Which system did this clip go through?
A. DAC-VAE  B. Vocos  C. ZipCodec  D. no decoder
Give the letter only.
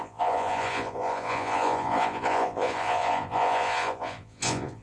B